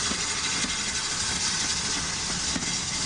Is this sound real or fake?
real